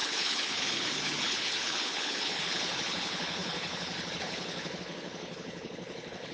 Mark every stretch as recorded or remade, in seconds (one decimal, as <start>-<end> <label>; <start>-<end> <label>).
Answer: 0.0-6.3 remade

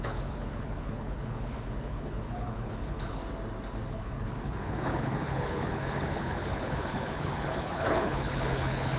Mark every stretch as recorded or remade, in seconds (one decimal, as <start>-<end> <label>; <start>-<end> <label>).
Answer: 0.0-3.2 remade; 3.2-3.9 recorded; 3.9-9.0 remade

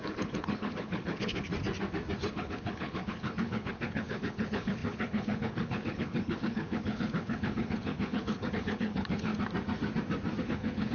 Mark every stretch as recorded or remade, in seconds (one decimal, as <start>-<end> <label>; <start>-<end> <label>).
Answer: 0.0-1.5 remade; 1.5-2.2 recorded; 2.2-9.3 remade; 9.3-10.4 recorded; 10.4-10.9 remade

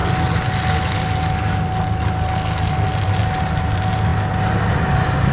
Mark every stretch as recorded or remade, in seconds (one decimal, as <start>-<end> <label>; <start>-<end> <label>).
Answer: 0.0-5.3 recorded

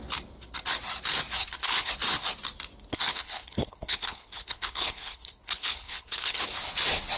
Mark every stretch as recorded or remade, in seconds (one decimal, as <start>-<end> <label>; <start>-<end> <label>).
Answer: 0.0-1.4 recorded; 1.4-1.9 remade; 1.9-2.9 recorded; 2.9-6.4 remade; 6.4-7.2 recorded

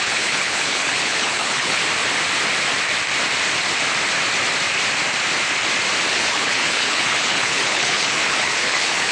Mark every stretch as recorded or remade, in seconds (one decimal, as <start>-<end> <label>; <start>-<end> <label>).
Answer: 0.0-1.8 remade; 1.8-6.1 recorded; 6.1-9.1 remade